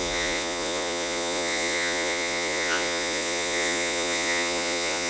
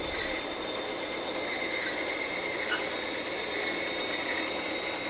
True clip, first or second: second